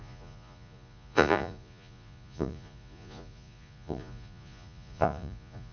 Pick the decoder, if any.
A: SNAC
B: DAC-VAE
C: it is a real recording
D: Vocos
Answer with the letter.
D